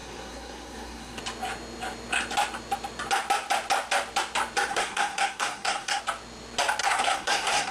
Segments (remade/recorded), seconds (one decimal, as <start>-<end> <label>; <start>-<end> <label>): 0.0-1.2 remade; 1.2-4.7 recorded; 4.7-6.0 remade; 6.0-6.8 recorded; 6.8-7.7 remade

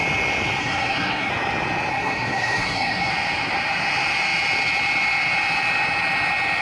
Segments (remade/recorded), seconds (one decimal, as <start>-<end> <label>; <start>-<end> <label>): 0.0-0.6 recorded; 0.6-1.3 remade; 1.3-1.9 recorded; 1.9-3.1 remade; 3.1-6.6 recorded